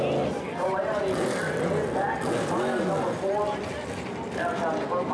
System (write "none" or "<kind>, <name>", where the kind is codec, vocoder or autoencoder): none